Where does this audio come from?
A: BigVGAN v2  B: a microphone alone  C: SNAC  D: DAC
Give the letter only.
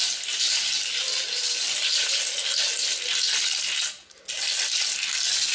B